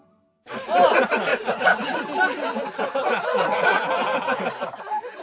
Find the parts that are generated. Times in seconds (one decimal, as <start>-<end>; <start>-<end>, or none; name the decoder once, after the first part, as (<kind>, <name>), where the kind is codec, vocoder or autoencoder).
1.3-2.0 (vocoder, Vocos); 3.3-3.9